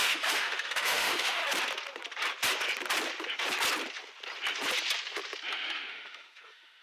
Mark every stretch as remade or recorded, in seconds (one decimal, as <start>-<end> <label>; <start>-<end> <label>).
0.0-1.4 remade; 1.4-5.5 recorded; 5.5-6.8 remade